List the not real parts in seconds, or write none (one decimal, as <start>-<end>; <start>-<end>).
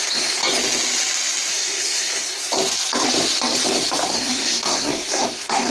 0.0-0.4; 1.5-2.4; 4.1-5.7